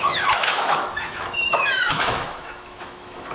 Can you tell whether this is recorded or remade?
remade